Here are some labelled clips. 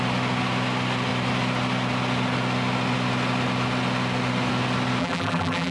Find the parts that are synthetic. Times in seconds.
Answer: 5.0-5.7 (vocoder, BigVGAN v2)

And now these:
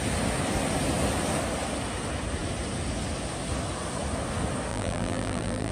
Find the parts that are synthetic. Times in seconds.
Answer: 4.7-5.7 (vocoder, BigVGAN v2)

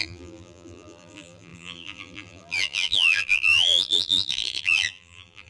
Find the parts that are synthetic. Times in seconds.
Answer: 0.0-5.5 (vocoder, BigVGAN v2)

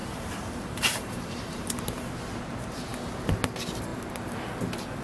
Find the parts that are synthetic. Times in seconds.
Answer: 0.0-2.1 (vocoder, BigVGAN v2)

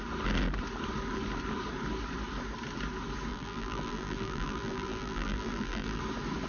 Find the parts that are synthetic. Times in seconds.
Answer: 3.3-6.0 (vocoder, BigVGAN v2)

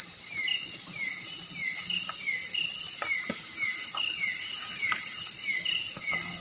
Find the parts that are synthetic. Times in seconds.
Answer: 0.0-6.4 (vocoder, BigVGAN v2)

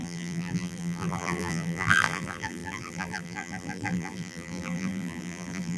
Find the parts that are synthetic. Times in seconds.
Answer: 0.0-5.8 (vocoder, BigVGAN v2)

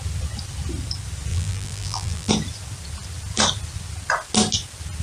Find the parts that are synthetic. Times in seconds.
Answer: 1.3-2.3 (vocoder, BigVGAN v2)